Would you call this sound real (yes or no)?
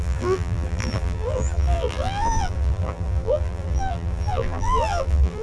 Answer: no